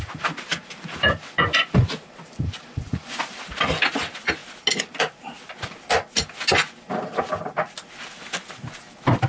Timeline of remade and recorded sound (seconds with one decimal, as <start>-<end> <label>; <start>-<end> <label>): 0.0-9.3 recorded